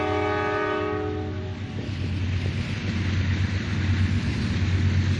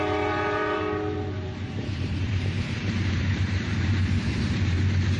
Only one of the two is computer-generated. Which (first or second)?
second